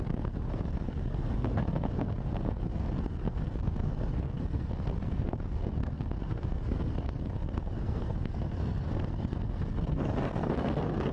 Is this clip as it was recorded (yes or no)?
no